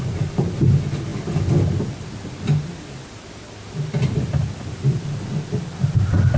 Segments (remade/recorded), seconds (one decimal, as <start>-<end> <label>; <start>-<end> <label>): 0.0-6.4 recorded